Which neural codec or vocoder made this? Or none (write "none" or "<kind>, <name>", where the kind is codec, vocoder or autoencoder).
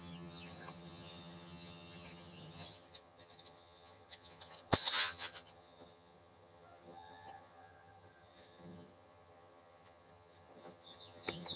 vocoder, HiFi-GAN